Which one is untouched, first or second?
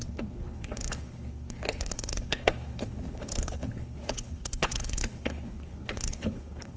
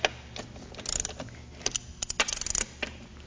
second